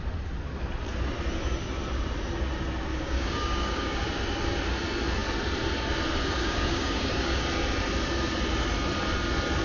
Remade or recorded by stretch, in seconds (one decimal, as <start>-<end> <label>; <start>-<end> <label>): 0.0-2.9 recorded; 2.9-4.0 remade; 4.0-6.4 recorded; 6.4-7.4 remade; 7.4-9.6 recorded